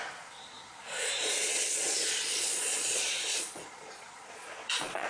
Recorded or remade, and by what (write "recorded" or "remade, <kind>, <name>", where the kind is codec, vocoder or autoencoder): remade, vocoder, Vocos